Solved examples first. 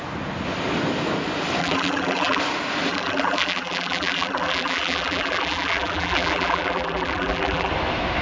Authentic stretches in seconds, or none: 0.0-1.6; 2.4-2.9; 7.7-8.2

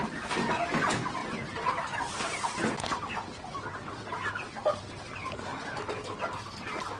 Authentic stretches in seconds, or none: 0.0-7.0